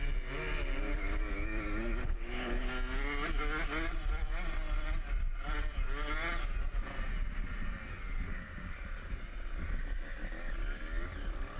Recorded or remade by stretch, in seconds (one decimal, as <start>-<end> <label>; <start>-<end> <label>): 0.0-2.0 recorded; 2.0-2.7 remade; 2.7-11.6 recorded